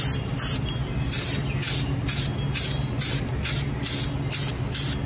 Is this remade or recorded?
recorded